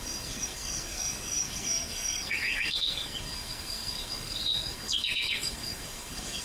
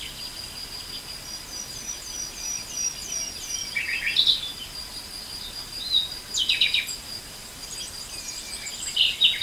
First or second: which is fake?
first